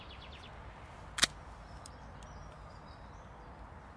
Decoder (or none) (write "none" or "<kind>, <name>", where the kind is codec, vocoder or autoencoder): none